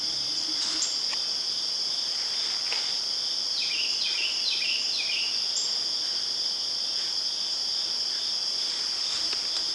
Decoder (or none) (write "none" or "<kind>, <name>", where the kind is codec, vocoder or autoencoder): none